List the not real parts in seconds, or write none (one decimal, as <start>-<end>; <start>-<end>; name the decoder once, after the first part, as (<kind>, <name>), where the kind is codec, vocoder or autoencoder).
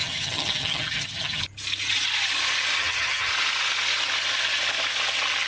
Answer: 0.0-1.4 (vocoder, HiFi-GAN); 2.8-3.3